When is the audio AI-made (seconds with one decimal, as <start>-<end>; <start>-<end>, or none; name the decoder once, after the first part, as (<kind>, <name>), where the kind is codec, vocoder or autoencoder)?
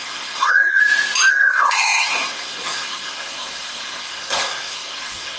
0.0-0.8 (codec, SNAC); 1.3-5.4